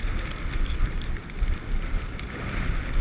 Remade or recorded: remade